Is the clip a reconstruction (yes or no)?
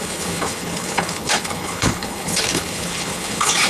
yes